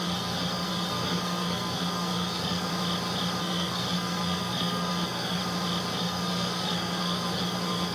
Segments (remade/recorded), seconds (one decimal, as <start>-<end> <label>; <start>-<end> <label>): 0.0-2.7 remade; 2.7-3.4 recorded; 3.4-5.4 remade; 5.4-5.9 recorded; 5.9-7.9 remade